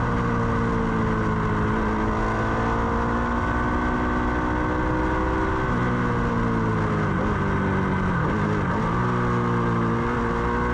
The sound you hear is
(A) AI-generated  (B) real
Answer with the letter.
B